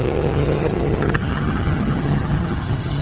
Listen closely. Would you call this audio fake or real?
fake